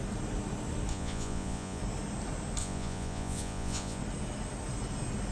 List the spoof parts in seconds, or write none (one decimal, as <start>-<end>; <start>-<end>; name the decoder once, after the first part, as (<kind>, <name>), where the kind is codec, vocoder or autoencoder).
0.9-1.8 (vocoder, Vocos); 2.6-4.0